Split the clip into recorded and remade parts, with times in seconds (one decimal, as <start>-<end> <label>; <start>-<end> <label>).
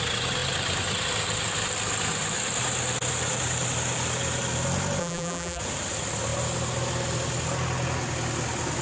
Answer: 0.0-5.0 recorded; 5.0-5.6 remade; 5.6-8.8 recorded